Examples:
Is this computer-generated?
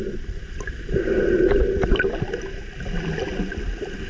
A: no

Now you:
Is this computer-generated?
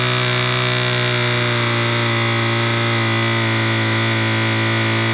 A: no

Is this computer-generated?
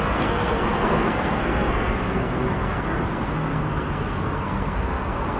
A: yes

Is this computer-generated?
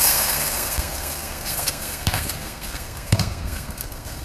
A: yes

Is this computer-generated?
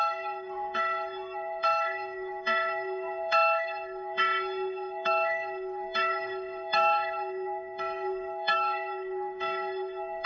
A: yes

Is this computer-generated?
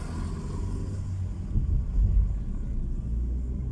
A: no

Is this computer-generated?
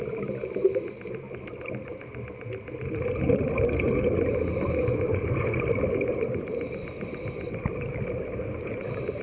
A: no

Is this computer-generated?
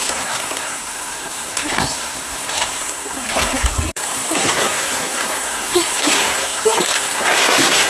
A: yes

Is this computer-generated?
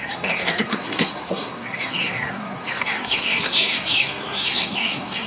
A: yes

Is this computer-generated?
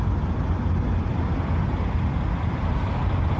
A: no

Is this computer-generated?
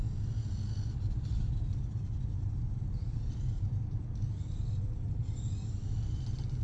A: no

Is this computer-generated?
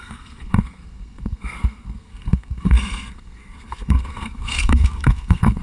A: yes